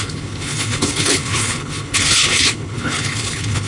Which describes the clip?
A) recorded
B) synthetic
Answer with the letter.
B